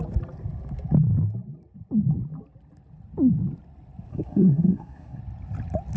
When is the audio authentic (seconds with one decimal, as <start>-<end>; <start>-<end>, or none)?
0.0-4.1; 5.2-6.0